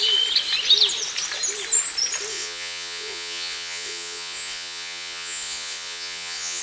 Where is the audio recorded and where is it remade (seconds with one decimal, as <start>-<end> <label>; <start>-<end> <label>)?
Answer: 0.0-2.3 recorded; 2.3-6.6 remade